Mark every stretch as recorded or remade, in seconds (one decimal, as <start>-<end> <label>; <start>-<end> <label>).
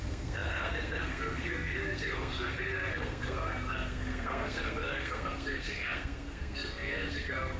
0.0-7.6 remade